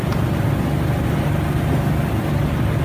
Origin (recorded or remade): recorded